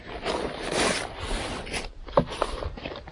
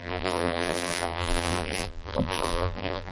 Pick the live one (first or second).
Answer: first